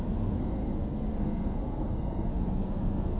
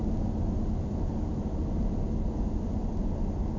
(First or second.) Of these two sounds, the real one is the second